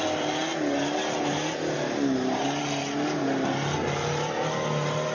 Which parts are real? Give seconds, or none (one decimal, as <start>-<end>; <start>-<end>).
0.0-5.1